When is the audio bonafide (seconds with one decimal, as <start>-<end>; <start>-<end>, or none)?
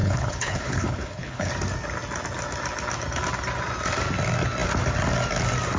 1.5-5.8